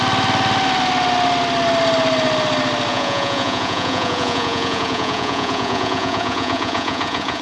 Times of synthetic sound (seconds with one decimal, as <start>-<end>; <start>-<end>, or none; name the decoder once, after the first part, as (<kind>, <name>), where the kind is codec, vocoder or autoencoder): 2.9-7.4 (vocoder, Vocos)